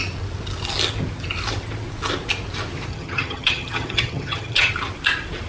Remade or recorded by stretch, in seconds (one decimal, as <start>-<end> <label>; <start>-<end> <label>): 0.0-2.9 recorded; 2.9-4.7 remade; 4.7-5.5 recorded